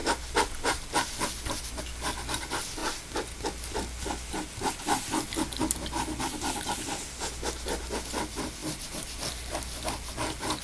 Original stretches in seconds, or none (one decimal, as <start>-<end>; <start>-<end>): 0.0-10.6